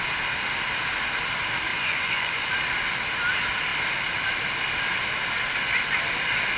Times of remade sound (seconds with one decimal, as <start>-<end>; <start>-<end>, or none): 1.7-2.5